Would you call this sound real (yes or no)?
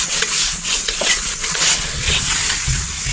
no